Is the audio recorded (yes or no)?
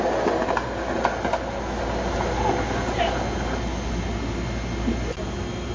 yes